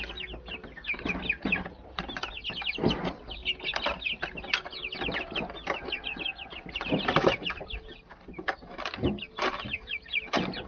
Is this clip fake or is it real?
real